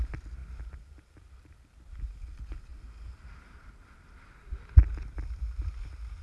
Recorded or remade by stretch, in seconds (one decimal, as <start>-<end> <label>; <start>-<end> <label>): 0.0-6.2 recorded